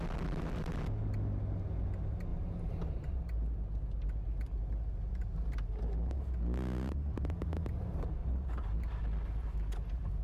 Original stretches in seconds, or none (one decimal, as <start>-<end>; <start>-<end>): 0.0-2.3; 3.1-8.2; 9.0-10.2